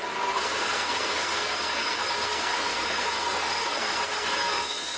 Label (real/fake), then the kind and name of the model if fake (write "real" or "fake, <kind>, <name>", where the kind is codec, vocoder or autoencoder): fake, codec, SNAC